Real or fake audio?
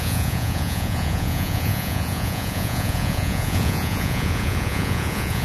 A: fake